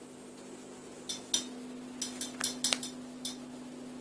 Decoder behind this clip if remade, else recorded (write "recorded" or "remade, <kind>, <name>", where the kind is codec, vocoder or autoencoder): recorded